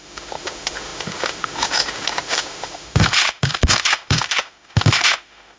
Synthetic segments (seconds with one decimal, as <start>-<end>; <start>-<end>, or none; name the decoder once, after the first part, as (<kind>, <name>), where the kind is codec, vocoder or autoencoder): 0.0-5.6 (autoencoder, DAC-VAE)